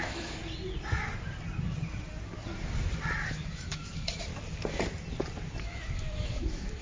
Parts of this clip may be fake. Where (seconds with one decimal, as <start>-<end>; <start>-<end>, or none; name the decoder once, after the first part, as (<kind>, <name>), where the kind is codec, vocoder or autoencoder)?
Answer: 0.0-0.4 (autoencoder, DAC-VAE); 3.3-4.3; 5.6-6.8